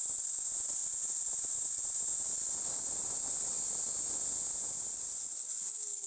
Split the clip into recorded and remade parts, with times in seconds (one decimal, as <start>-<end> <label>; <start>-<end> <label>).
0.0-6.1 recorded